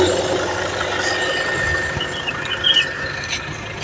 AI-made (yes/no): no